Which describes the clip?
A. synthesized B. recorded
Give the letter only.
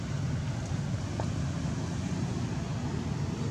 B